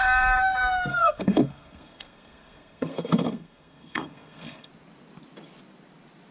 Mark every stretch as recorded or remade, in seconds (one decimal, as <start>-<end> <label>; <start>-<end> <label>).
0.0-0.9 recorded; 0.9-4.7 remade; 4.7-6.3 recorded